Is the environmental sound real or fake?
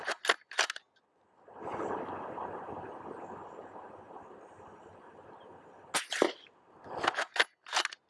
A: real